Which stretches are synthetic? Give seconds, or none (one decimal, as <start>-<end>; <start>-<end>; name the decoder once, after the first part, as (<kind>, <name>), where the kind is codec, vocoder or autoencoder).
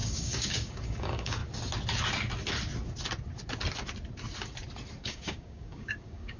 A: 0.0-1.4 (codec, DAC); 5.0-6.4